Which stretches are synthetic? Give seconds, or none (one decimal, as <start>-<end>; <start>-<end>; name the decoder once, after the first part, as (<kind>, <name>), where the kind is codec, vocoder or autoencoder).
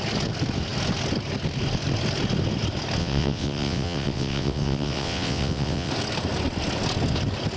3.0-5.9 (vocoder, WaveNeXt)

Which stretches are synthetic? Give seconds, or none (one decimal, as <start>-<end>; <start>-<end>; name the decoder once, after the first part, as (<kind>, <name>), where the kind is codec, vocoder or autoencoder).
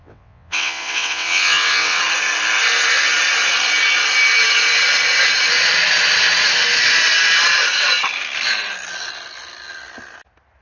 0.0-2.0 (vocoder, WaveNeXt)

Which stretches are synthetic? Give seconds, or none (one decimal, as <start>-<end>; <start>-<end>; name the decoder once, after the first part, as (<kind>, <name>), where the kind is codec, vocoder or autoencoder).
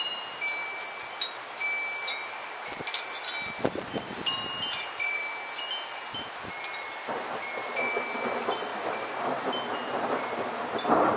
none